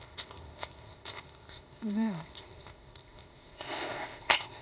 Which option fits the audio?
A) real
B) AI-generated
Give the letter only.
B